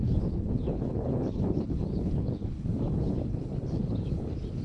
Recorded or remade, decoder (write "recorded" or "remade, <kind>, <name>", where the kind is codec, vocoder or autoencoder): remade, codec, HILCodec